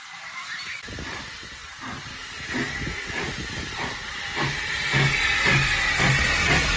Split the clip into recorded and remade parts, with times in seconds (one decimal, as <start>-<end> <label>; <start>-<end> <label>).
0.0-1.6 recorded; 1.6-2.3 remade; 2.3-2.9 recorded; 2.9-4.8 remade; 4.8-6.8 recorded